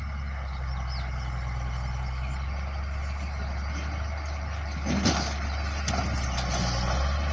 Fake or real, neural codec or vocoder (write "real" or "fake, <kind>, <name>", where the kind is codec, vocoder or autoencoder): real